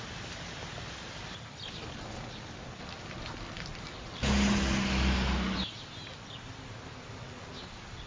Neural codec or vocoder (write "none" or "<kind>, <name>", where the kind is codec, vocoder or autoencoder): none